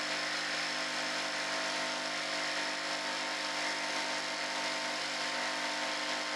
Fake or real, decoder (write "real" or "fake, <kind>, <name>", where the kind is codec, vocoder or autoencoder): real